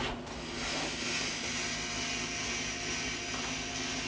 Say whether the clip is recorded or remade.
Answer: recorded